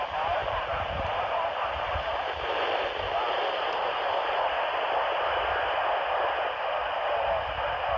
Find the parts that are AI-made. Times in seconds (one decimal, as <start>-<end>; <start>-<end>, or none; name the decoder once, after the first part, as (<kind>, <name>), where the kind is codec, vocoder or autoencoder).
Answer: none